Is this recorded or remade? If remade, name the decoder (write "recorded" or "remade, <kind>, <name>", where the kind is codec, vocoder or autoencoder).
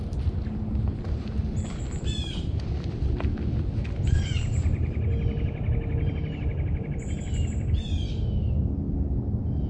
recorded